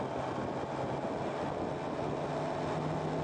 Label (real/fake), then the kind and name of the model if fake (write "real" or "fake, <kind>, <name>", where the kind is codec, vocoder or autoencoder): real